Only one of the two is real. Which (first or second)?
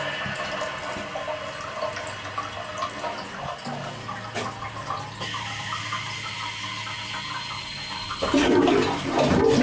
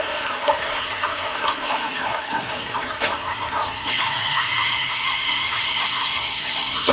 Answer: first